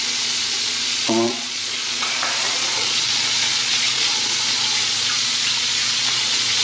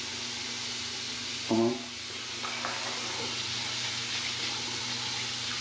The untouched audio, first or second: second